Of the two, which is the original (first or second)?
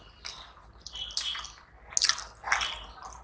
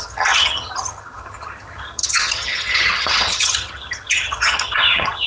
first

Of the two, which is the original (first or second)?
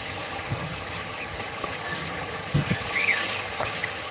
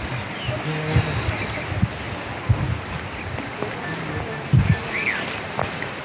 second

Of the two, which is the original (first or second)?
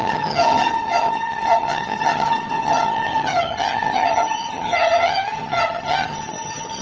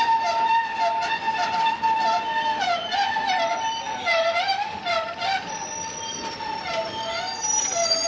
second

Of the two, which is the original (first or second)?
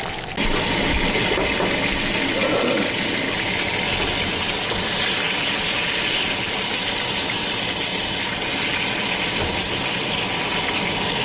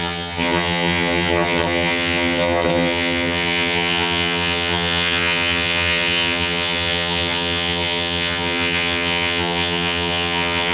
first